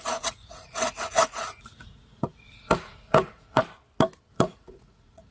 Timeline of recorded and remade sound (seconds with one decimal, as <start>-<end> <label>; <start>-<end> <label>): 0.0-3.6 remade; 3.6-4.3 recorded; 4.3-5.3 remade